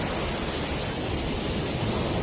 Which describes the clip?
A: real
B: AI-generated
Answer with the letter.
A